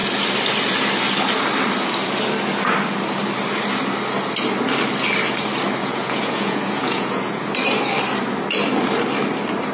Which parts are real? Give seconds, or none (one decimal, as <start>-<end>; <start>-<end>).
0.0-5.8; 7.4-9.7